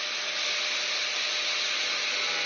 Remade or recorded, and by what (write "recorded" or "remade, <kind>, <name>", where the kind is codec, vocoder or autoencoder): recorded